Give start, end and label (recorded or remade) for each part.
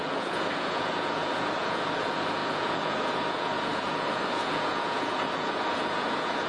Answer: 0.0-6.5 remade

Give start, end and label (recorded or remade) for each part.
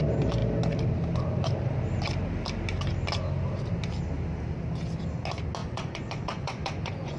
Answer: 0.0-5.6 recorded; 5.6-7.2 remade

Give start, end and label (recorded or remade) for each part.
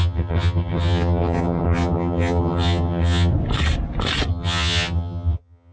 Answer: 0.0-3.3 remade; 3.3-4.3 recorded; 4.3-5.7 remade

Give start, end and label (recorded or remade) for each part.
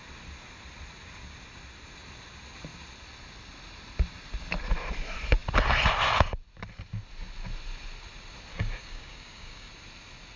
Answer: 0.0-8.5 recorded; 8.5-9.7 remade; 9.7-10.4 recorded